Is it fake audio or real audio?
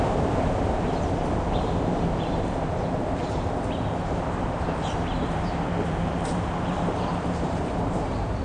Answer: fake